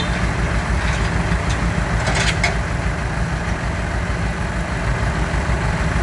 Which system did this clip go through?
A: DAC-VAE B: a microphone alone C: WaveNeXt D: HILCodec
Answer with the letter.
B